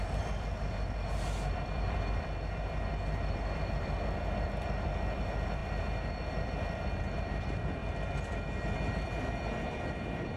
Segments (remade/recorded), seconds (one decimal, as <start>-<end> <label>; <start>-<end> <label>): 0.0-7.8 remade; 7.8-9.6 recorded; 9.6-10.4 remade